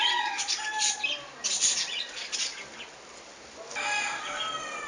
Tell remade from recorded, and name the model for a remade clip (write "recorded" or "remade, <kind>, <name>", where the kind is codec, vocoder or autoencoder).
recorded